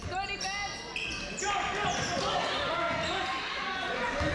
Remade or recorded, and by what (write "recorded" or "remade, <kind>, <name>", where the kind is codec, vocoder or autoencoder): recorded